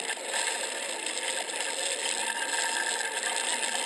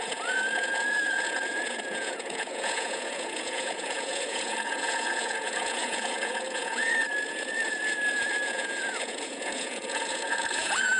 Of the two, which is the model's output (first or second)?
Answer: second